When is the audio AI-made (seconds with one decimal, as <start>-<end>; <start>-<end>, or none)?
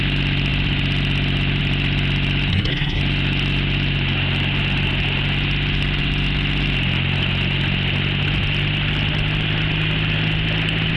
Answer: 2.5-3.0